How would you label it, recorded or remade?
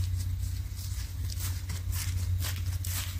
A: recorded